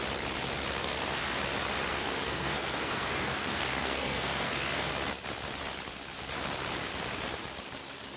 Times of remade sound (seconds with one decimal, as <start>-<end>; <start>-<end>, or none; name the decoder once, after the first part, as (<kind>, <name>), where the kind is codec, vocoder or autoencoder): 0.8-1.4 (codec, SNAC); 1.9-4.9